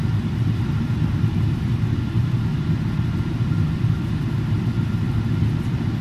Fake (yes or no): no